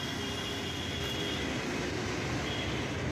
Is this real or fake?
real